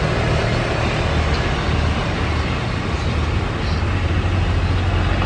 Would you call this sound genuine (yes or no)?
yes